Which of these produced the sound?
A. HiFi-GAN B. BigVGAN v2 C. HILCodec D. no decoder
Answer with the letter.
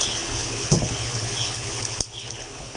C